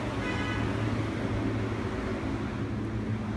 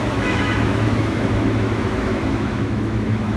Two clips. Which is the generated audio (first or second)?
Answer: second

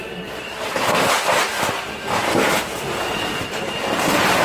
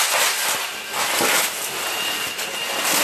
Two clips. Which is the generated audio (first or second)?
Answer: first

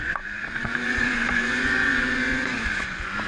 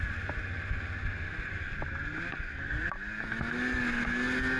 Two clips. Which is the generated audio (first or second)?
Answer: first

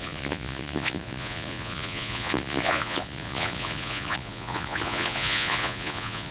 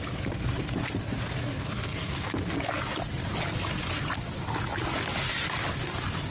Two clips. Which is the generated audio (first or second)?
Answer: first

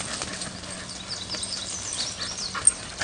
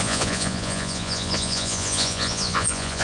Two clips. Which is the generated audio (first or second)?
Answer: second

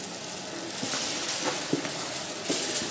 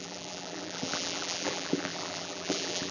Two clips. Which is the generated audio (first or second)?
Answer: second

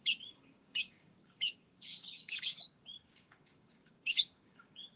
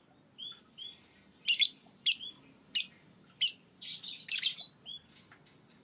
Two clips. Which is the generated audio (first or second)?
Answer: first